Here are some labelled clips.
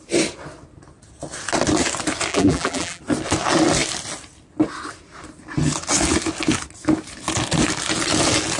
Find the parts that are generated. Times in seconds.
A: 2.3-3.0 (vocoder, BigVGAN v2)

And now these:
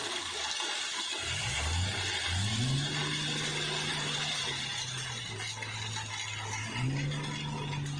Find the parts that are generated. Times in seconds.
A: 3.9-5.5 (vocoder, BigVGAN v2)

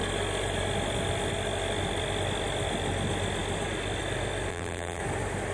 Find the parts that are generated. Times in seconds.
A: 4.5-5.0 (vocoder, BigVGAN v2)

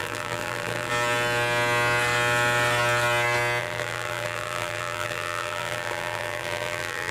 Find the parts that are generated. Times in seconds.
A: 0.0-0.9 (vocoder, BigVGAN v2); 3.6-7.1

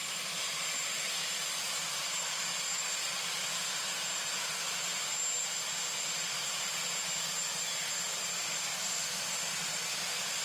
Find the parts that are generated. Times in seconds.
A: none

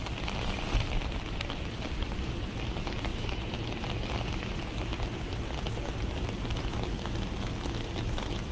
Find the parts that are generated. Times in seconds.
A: none

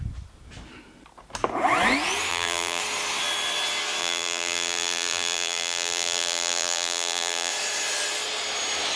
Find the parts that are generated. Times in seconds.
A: 2.3-2.8 (vocoder, BigVGAN v2); 4.0-7.5

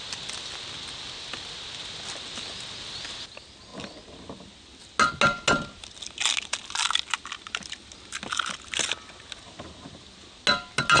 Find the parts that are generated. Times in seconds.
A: none